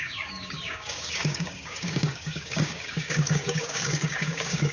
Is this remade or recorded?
remade